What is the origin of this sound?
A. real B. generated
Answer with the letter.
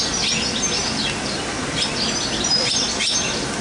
A